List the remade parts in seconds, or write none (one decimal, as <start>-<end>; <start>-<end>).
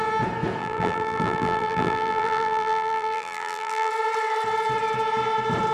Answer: 0.6-3.9